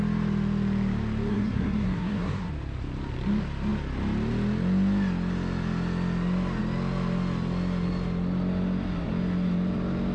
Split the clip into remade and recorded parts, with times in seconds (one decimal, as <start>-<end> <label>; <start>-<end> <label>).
0.0-1.3 recorded; 1.3-2.5 remade; 2.5-10.1 recorded

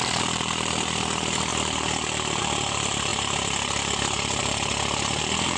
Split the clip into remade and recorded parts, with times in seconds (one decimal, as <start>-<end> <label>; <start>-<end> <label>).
0.0-5.6 remade

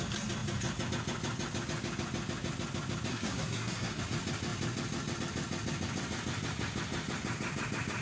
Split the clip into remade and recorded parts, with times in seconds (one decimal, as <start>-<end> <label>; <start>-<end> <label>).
0.0-3.1 recorded; 3.1-4.0 remade; 4.0-8.0 recorded

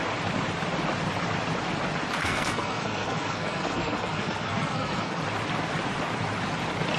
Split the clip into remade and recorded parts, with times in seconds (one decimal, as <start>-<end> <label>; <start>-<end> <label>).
0.0-2.2 recorded; 2.2-5.2 remade; 5.2-7.0 recorded

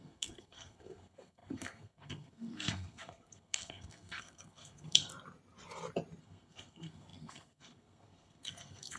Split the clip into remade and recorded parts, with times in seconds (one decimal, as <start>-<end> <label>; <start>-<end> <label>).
0.0-5.1 remade; 5.1-6.2 recorded; 6.2-9.0 remade

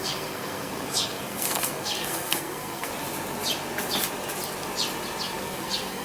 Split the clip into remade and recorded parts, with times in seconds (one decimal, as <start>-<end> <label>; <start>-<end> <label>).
0.0-2.9 remade; 2.9-5.4 recorded; 5.4-6.0 remade

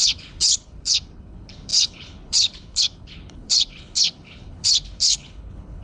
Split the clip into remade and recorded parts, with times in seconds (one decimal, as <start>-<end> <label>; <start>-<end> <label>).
0.0-5.8 remade

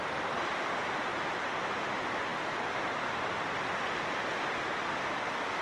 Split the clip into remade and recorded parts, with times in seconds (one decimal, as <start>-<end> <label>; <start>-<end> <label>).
0.0-5.6 recorded